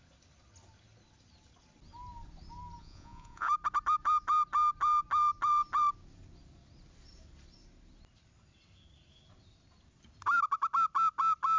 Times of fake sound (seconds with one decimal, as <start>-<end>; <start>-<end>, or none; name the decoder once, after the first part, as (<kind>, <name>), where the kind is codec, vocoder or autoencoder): 2.8-3.5 (vocoder, Vocos)